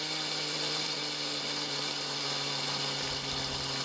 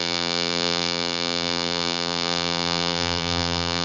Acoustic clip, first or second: first